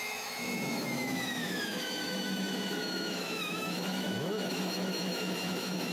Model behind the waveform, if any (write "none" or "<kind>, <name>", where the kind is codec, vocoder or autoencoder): autoencoder, DAC-VAE